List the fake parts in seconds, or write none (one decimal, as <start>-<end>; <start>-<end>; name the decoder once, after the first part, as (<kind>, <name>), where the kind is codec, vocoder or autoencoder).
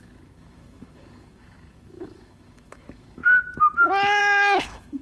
0.0-3.2 (autoencoder, DAC-VAE); 4.2-5.0